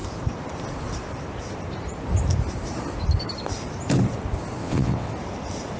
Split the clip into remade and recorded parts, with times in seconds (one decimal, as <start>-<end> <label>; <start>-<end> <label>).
0.0-4.6 recorded; 4.6-5.1 remade; 5.1-5.8 recorded